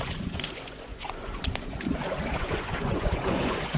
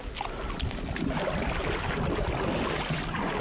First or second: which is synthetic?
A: first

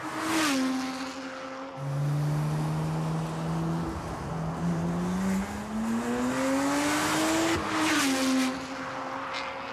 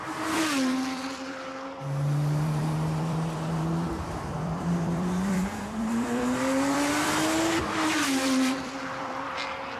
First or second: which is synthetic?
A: second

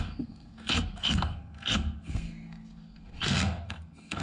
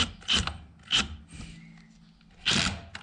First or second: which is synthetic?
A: first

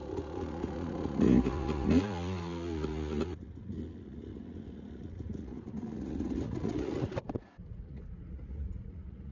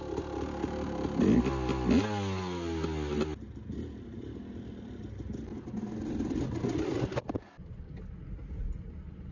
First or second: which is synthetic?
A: first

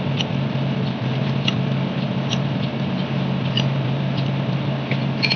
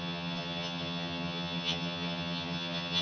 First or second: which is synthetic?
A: second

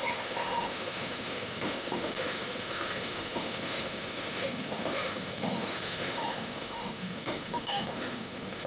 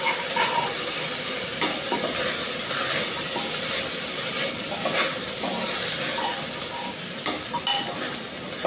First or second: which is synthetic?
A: first